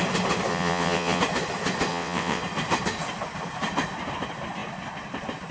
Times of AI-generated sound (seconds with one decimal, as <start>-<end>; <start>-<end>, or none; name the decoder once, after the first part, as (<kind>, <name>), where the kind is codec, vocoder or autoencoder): 0.5-1.2 (vocoder, WaveNeXt); 1.9-2.4